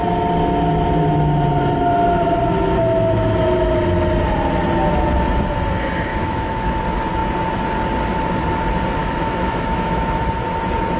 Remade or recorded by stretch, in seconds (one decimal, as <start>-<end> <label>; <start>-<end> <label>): 0.0-6.1 recorded; 6.1-6.8 remade; 6.8-9.0 recorded; 9.0-10.2 remade; 10.2-11.0 recorded